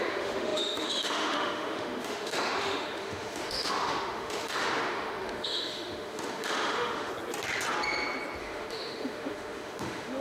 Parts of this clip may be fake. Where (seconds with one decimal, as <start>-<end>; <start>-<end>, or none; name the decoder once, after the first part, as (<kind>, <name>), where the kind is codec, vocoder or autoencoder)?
0.0-7.1 (autoencoder, DAC-VAE); 8.4-10.2